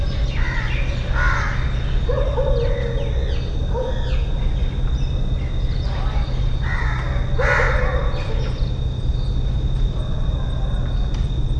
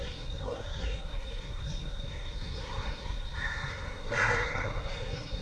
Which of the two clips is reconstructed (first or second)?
second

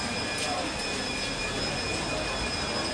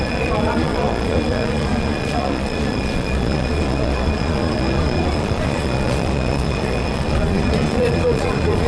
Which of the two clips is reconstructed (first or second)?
second